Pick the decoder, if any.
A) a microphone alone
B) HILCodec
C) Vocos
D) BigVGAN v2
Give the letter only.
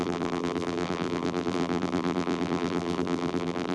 D